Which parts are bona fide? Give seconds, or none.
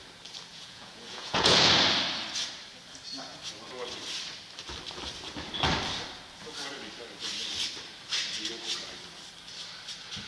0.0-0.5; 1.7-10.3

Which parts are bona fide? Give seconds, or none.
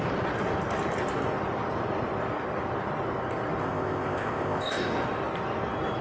0.0-3.6; 4.9-6.0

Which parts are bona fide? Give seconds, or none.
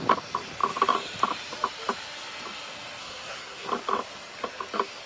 0.0-3.0; 3.7-5.1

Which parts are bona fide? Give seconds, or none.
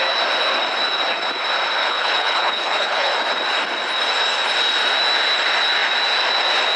0.0-1.8; 3.1-6.8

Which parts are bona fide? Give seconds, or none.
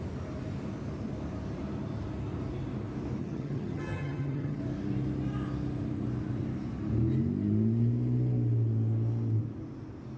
0.0-3.2; 4.6-10.2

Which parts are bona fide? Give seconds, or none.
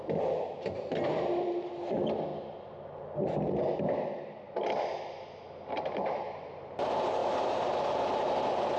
0.0-7.2; 8.3-8.8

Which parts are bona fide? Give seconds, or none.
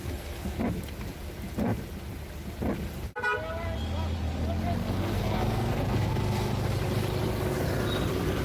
0.6-4.8; 6.6-8.4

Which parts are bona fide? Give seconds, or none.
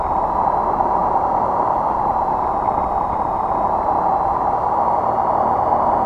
0.0-6.1